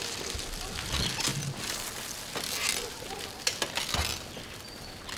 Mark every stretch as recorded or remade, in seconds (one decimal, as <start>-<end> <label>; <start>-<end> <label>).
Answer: 0.0-5.2 recorded

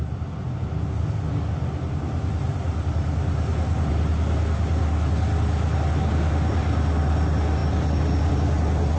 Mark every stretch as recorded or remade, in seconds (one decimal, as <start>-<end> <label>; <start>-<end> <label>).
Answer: 0.0-9.0 recorded

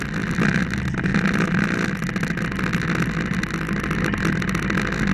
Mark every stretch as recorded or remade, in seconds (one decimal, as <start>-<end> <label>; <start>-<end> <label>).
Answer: 0.0-5.1 recorded

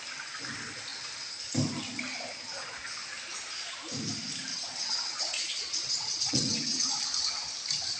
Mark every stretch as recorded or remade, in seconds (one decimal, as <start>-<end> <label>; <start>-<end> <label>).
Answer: 0.0-4.5 recorded; 4.5-6.9 remade; 6.9-8.0 recorded

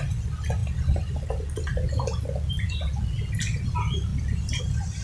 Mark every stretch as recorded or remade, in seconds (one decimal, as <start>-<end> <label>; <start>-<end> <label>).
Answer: 0.0-5.0 recorded